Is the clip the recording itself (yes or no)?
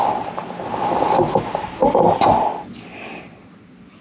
yes